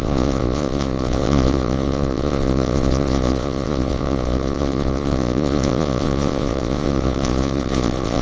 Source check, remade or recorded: remade